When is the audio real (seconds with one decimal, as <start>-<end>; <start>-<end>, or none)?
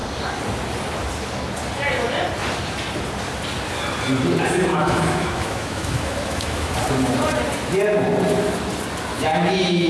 0.0-4.7; 6.7-9.1